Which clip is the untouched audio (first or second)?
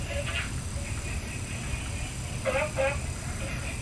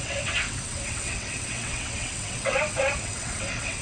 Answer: first